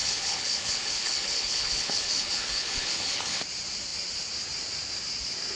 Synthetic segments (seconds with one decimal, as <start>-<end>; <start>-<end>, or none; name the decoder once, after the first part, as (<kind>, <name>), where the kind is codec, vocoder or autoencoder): 0.0-3.4 (codec, HILCodec)